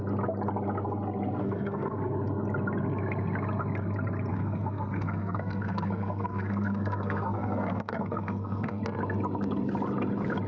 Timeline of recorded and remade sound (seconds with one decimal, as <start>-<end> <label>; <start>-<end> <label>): 0.0-1.4 recorded; 1.4-1.9 remade; 1.9-4.3 recorded; 4.3-8.8 remade; 8.8-10.5 recorded